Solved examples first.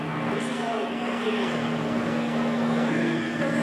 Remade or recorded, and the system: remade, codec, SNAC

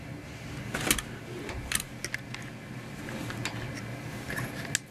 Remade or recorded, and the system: recorded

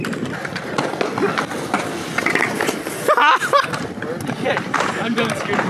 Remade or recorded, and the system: recorded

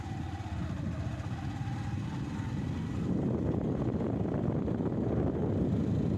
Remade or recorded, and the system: recorded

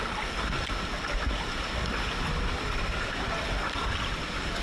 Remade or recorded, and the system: recorded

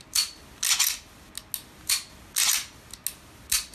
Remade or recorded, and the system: recorded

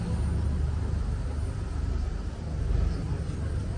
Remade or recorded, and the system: recorded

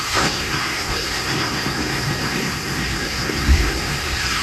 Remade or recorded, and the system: remade, codec, SNAC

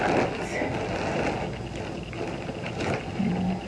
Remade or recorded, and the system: recorded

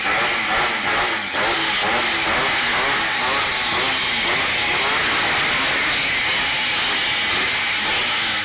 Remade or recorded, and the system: recorded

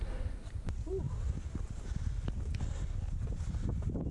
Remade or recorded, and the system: recorded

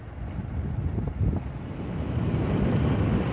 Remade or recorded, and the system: recorded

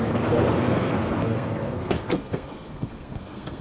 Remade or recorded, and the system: remade, codec, SNAC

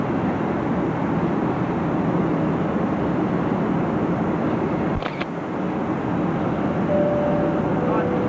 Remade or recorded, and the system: recorded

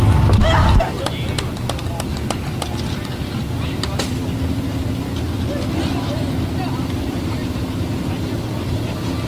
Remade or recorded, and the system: recorded